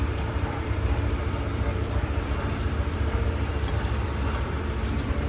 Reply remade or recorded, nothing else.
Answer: remade